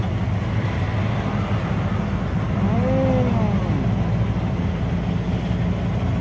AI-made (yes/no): no